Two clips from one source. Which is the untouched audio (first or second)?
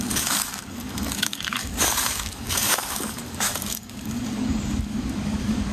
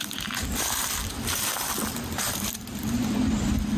second